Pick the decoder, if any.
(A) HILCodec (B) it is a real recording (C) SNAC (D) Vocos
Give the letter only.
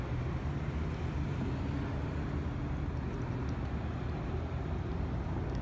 B